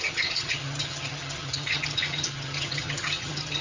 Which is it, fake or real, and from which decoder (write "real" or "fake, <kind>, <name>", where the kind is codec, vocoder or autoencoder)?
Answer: fake, vocoder, HiFi-GAN